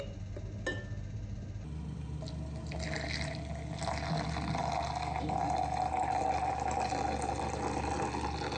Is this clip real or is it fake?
real